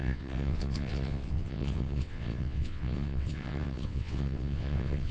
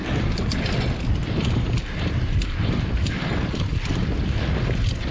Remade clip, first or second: first